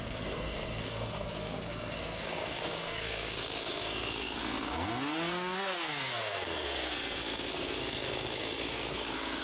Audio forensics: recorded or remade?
remade